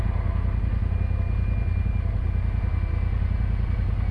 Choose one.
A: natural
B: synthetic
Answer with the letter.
A